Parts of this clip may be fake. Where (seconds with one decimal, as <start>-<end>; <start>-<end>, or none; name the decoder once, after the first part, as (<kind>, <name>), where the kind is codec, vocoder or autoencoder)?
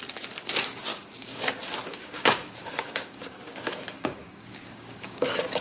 0.9-1.5 (codec, DAC); 1.9-5.6